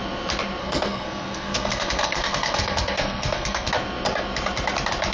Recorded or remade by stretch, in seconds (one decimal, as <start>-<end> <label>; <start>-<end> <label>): 0.0-0.6 recorded; 0.6-3.7 remade; 3.7-5.1 recorded